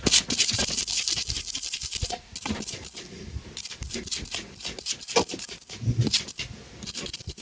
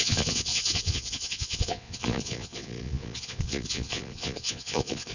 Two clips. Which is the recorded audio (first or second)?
first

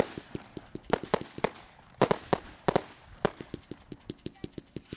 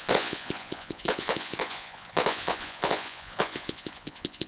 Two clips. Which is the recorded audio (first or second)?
first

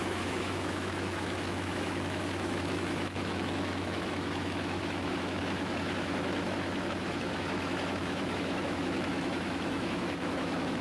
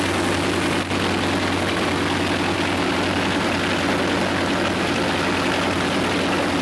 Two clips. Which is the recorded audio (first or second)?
second